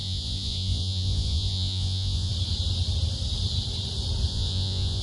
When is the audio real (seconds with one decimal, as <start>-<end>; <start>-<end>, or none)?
2.3-4.3